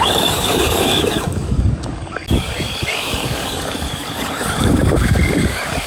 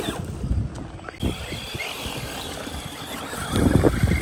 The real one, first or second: second